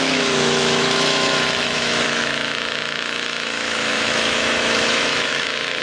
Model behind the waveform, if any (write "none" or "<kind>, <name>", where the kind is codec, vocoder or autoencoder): autoencoder, DAC-VAE